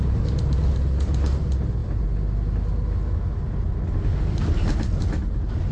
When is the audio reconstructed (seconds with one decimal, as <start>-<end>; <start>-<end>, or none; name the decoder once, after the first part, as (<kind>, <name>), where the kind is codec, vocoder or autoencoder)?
none